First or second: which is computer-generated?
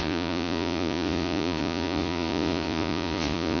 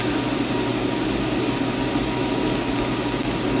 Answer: first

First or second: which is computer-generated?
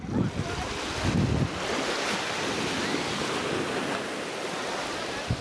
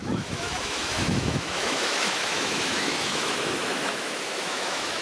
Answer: second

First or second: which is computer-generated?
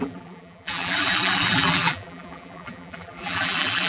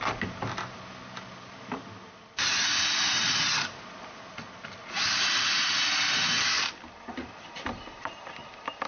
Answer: first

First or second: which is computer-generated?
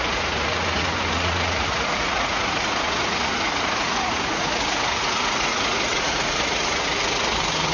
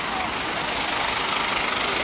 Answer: first